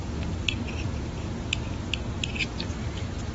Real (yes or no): yes